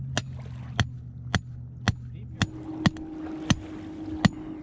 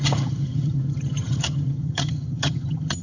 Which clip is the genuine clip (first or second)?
first